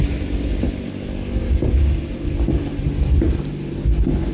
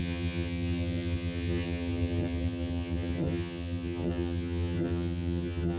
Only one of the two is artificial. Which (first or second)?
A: second